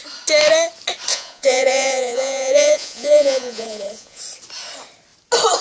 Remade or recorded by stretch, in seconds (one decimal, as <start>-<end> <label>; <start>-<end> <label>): 0.0-1.1 recorded; 1.1-4.2 remade; 4.2-5.6 recorded